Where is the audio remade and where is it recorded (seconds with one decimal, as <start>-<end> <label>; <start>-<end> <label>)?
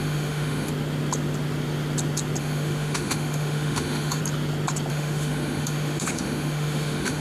0.0-0.7 remade; 0.7-2.4 recorded; 2.4-4.2 remade; 4.2-4.9 recorded; 4.9-7.2 remade